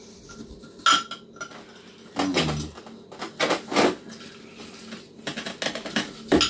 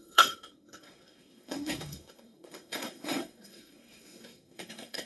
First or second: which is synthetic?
second